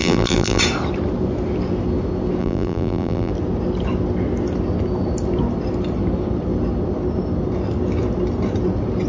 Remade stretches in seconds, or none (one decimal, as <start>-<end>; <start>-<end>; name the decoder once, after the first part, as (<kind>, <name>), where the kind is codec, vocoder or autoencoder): 0.0-0.6 (vocoder, BigVGAN v2); 2.4-3.3